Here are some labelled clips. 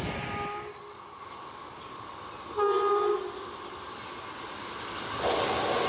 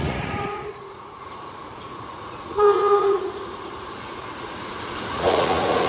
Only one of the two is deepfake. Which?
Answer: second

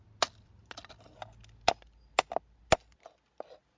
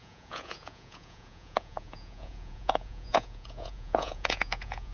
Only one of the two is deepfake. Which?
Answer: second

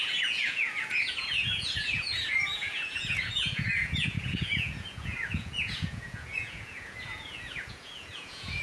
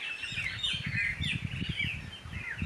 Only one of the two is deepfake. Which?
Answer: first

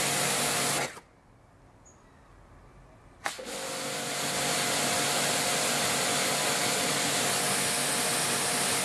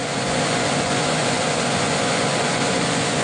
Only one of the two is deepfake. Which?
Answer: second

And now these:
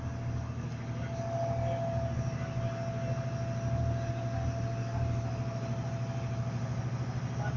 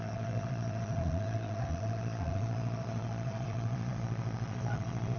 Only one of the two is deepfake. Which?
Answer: second